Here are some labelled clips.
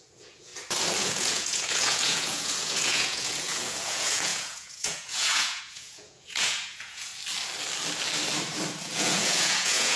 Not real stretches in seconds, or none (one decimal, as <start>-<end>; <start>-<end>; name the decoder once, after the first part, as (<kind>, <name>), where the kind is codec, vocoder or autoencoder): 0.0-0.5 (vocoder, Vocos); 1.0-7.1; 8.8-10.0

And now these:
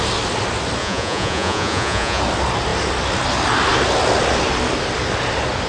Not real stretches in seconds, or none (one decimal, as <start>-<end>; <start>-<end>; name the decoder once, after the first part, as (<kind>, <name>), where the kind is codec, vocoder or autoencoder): 0.8-2.2 (vocoder, Vocos)

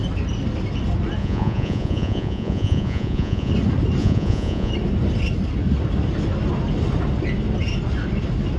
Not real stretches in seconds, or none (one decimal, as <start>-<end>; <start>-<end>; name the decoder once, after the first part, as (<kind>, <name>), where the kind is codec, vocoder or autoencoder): 1.2-3.5 (vocoder, Vocos); 4.0-4.7

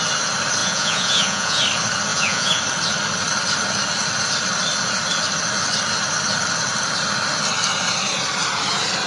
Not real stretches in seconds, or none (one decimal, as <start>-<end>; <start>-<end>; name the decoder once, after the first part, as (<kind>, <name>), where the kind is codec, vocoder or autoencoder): 0.6-1.6 (vocoder, Vocos); 2.1-2.6

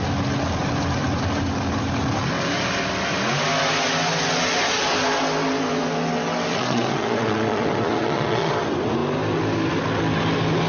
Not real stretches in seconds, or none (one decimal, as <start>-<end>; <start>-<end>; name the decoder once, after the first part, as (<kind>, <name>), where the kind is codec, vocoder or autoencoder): 6.5-8.5 (vocoder, Vocos)

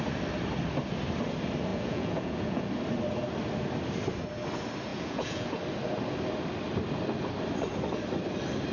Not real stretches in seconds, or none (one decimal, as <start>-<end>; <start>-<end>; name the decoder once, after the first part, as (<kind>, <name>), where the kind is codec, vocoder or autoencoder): 1.7-2.7 (vocoder, Vocos); 4.9-5.6

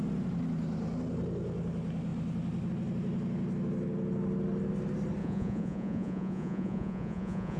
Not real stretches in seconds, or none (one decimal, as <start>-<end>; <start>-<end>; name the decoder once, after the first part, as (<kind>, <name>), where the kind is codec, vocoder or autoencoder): 5.2-7.6 (vocoder, Vocos)

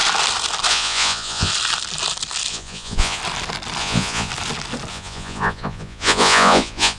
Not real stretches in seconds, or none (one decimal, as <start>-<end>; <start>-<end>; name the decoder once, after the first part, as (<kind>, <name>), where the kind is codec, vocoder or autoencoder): 0.7-1.5 (vocoder, Vocos); 2.5-3.2; 3.8-4.3; 4.9-7.0